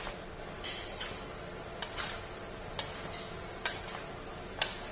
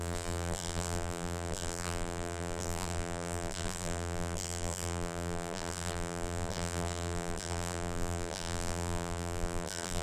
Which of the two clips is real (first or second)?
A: first